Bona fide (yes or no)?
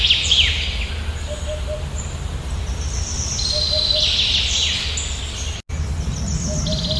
yes